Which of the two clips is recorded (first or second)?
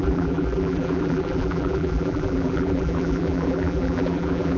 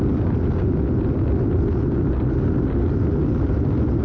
second